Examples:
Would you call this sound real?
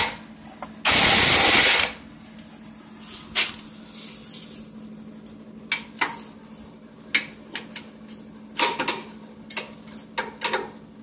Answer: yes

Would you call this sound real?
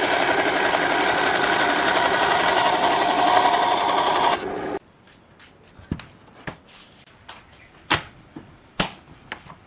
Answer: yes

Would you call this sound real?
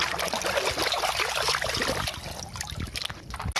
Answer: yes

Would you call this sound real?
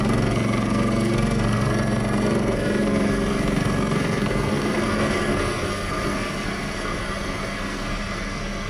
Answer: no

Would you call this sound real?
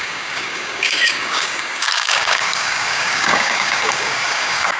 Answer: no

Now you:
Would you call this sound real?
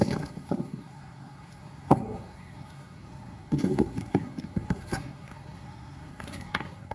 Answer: no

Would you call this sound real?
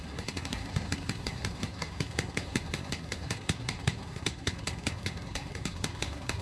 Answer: no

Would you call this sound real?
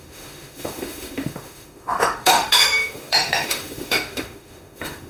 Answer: no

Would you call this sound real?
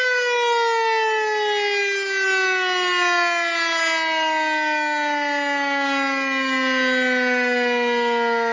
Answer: yes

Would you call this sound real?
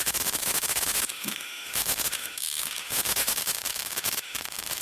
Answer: no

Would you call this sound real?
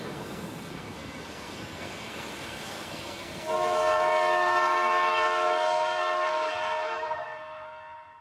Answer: no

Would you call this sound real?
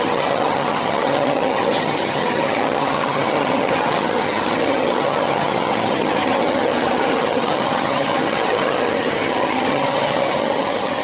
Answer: no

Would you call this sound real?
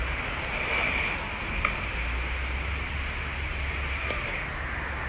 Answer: yes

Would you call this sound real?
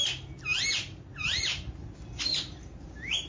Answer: yes